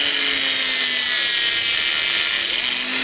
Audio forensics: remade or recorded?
recorded